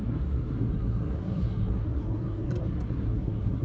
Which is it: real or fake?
fake